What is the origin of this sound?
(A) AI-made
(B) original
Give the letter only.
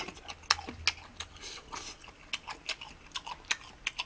B